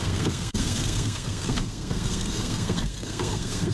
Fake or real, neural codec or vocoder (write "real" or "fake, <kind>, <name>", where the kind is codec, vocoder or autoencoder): fake, codec, SNAC